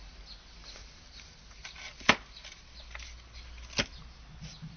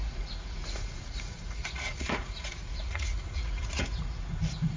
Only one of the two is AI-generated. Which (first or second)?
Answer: second